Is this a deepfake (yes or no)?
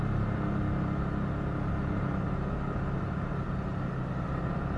no